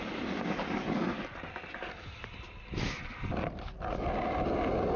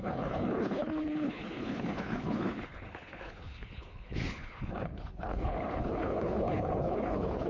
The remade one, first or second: second